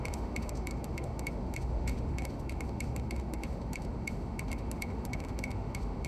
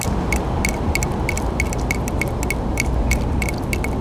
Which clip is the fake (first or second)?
first